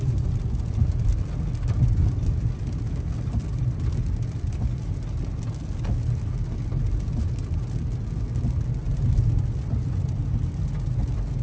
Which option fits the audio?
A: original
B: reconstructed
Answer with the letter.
A